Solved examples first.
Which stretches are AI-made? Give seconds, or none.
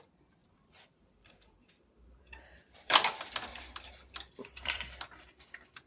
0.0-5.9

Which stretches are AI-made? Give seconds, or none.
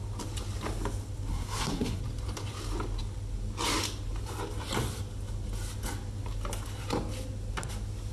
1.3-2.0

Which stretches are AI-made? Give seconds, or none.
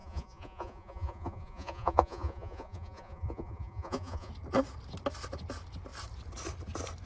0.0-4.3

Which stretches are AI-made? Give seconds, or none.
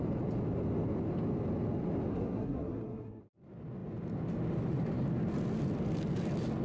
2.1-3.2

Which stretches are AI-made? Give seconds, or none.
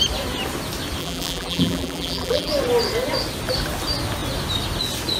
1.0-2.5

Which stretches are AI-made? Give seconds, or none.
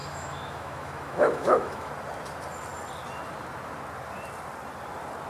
0.0-1.9